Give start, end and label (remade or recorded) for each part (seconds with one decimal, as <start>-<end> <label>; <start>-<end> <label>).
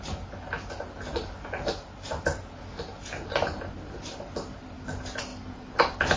0.0-6.2 recorded